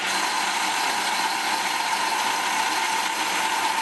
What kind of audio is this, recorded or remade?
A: recorded